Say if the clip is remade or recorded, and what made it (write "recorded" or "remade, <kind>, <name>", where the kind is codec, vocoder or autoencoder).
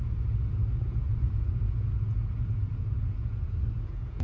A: remade, vocoder, Vocos